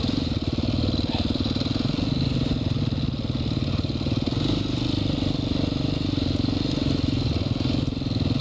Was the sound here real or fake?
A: real